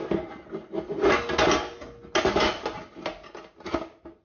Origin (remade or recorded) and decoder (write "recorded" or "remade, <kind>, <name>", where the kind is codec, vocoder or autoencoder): recorded